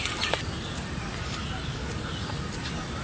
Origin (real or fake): real